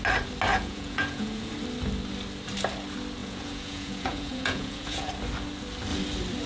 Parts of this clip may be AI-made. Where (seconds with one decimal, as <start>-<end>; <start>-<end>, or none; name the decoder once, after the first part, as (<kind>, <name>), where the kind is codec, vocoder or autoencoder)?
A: 0.5-1.5 (vocoder, Vocos); 3.2-5.1